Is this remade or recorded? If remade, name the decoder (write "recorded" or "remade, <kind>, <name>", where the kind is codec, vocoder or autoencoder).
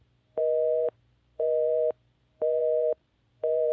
remade, vocoder, BigVGAN v2